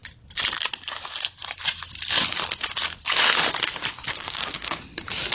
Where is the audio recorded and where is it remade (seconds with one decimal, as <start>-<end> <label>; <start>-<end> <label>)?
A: 0.0-4.1 recorded; 4.1-4.8 remade; 4.8-5.3 recorded

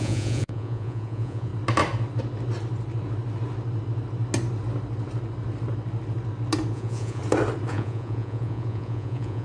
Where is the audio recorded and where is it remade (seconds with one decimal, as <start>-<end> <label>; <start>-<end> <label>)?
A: 0.0-1.5 remade; 1.5-6.7 recorded; 6.7-7.2 remade; 7.2-7.7 recorded; 7.7-9.4 remade

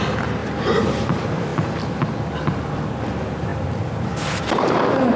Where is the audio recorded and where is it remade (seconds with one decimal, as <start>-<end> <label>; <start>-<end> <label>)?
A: 0.0-5.2 recorded

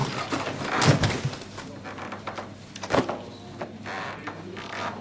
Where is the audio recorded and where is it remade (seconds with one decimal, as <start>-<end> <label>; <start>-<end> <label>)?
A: 0.0-5.0 recorded

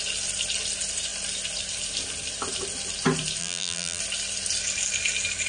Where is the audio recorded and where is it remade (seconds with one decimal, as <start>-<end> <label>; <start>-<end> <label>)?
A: 0.0-3.4 recorded; 3.4-4.0 remade; 4.0-5.5 recorded